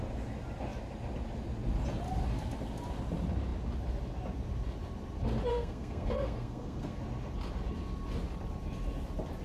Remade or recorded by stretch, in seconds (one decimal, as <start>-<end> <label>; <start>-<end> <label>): 0.0-5.5 recorded; 5.5-7.0 remade; 7.0-9.4 recorded